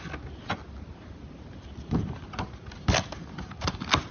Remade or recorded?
recorded